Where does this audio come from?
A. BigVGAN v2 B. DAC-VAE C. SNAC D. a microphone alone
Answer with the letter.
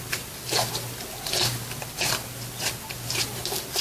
D